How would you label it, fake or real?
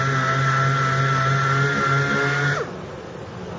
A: real